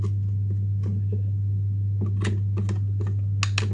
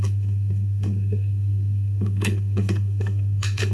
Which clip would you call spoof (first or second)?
second